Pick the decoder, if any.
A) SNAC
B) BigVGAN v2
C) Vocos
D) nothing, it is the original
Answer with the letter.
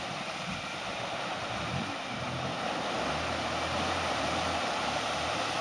D